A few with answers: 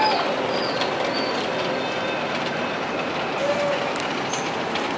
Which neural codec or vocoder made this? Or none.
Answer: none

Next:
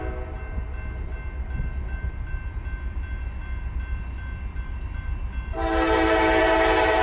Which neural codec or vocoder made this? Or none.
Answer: none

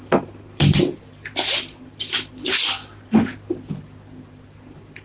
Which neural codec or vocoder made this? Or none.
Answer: none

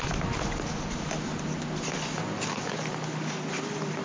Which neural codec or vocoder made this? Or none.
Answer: none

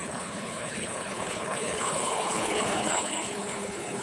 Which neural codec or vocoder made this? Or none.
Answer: codec, HILCodec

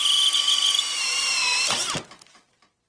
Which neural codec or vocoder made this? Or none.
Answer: none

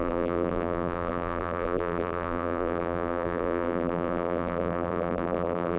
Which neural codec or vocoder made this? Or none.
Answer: vocoder, BigVGAN v2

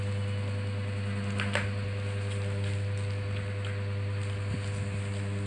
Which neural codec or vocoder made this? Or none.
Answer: none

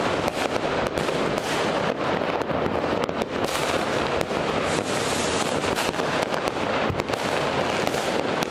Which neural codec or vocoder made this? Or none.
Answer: none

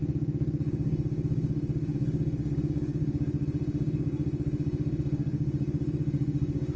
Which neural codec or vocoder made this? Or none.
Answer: codec, DAC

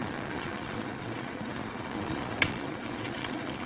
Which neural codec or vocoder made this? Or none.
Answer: vocoder, Vocos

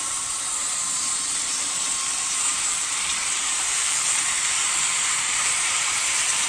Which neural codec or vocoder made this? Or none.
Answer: vocoder, BigVGAN v2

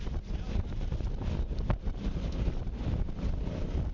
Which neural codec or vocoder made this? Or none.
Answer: none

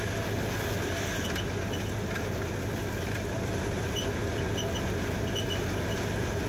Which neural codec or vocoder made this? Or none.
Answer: none